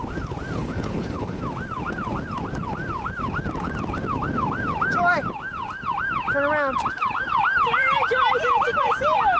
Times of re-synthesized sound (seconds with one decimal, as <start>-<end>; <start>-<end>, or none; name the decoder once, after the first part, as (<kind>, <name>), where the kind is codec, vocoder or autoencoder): 0.6-1.4 (codec, HILCodec)